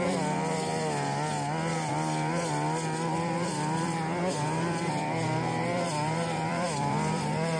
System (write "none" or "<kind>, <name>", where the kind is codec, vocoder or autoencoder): vocoder, BigVGAN v2